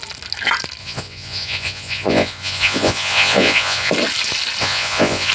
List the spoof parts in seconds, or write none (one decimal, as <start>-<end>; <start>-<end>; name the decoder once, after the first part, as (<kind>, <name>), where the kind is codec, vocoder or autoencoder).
0.8-3.9 (vocoder, Vocos); 4.6-5.3